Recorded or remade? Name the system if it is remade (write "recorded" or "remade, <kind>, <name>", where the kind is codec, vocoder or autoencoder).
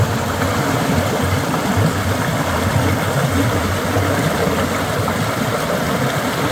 recorded